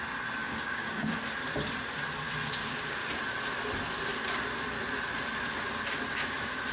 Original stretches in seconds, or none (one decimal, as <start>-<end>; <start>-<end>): 0.0-0.4; 1.1-2.6; 3.1-6.7